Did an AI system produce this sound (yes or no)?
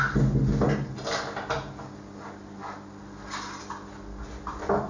no